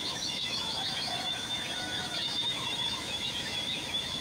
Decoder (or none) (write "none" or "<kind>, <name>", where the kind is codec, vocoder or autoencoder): autoencoder, DAC-VAE